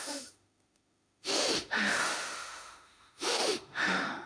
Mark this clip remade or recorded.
remade